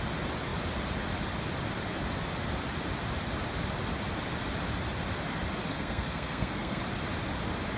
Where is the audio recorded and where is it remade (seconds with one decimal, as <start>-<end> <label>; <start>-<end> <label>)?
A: 0.0-5.7 recorded; 5.7-6.8 remade; 6.8-7.8 recorded